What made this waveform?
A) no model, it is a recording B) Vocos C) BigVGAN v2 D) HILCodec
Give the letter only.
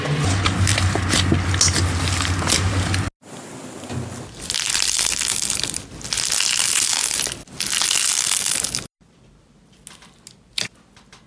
A